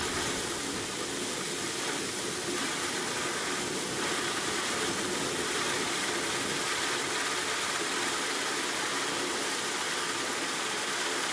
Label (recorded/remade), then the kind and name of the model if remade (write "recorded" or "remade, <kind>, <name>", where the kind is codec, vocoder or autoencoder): remade, vocoder, BigVGAN v2